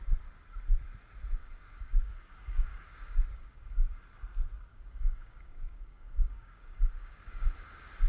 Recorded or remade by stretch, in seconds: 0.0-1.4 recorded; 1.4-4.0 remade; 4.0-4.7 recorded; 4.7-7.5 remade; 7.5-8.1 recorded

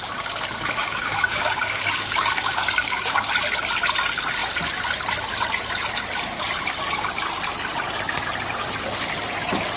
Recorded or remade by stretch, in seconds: 0.0-0.8 recorded; 0.8-3.3 remade; 3.3-9.8 recorded